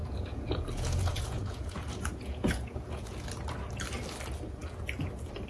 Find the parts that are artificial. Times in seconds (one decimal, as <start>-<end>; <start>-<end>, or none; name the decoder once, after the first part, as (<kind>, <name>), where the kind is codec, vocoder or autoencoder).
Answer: 0.0-3.3 (vocoder, Vocos)